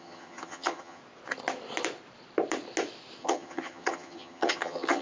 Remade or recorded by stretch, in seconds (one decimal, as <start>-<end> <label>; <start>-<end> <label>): 0.0-1.0 remade; 1.0-3.2 recorded; 3.2-5.0 remade